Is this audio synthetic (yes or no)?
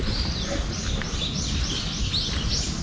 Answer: no